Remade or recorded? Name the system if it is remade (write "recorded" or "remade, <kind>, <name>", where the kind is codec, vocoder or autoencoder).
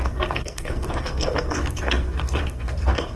remade, codec, SNAC